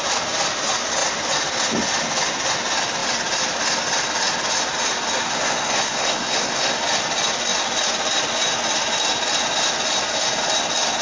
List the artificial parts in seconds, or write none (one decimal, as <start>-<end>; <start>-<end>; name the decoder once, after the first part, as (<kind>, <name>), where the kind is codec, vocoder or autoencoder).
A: 5.3-6.8 (codec, SNAC)